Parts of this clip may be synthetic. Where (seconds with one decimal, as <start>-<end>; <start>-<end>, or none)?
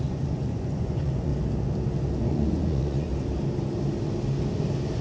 0.0-1.3; 2.3-3.1